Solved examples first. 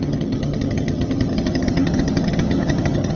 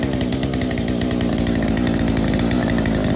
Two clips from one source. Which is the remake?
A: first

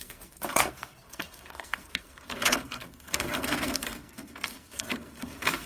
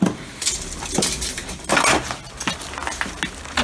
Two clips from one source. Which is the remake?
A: first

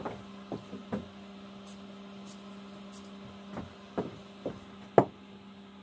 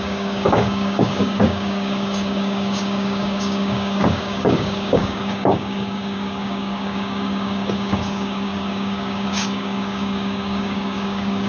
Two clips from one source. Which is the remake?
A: second